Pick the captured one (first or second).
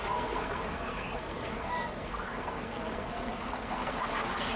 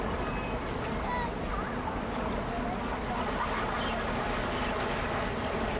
second